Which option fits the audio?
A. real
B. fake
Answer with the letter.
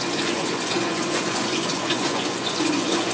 B